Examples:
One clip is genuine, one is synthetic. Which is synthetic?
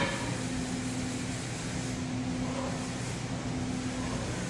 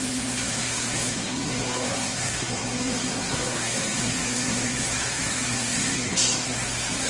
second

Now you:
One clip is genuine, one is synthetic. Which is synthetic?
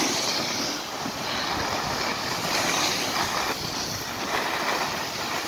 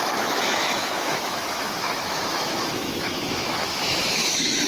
second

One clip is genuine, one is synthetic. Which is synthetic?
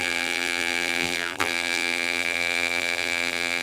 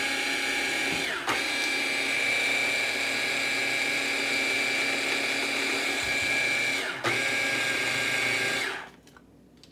first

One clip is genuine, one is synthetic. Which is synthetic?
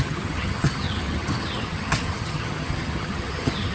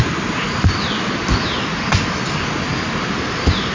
first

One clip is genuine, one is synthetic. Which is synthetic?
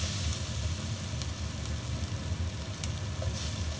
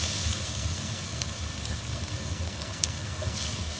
second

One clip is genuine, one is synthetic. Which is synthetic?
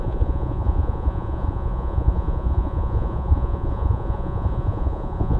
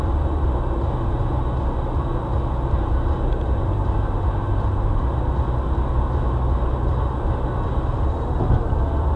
first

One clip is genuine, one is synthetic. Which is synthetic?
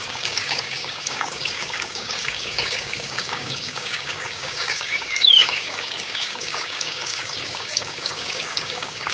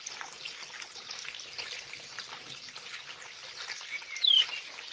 first